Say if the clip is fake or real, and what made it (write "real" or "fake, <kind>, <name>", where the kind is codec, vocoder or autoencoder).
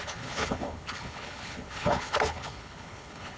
fake, codec, HILCodec